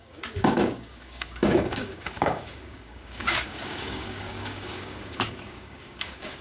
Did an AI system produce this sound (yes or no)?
yes